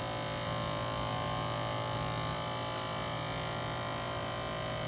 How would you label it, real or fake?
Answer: real